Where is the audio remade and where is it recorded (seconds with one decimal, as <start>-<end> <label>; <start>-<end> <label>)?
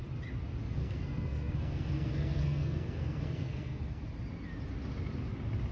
0.0-0.6 recorded; 0.6-4.0 remade; 4.0-5.7 recorded